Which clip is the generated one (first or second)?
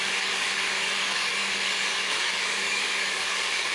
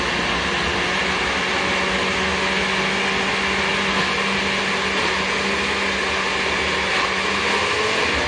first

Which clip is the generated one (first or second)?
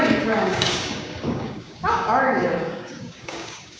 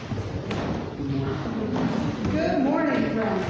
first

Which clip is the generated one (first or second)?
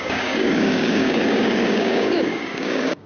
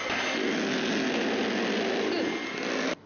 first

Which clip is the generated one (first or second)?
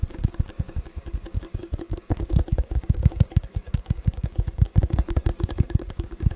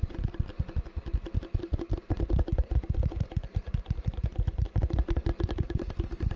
first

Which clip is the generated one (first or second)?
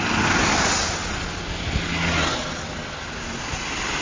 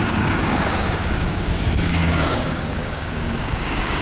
second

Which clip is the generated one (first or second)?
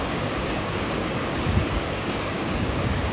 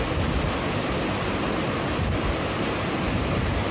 first